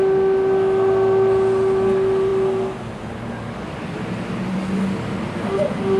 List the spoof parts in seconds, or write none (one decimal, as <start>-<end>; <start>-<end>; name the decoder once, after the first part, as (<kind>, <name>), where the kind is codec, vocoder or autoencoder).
none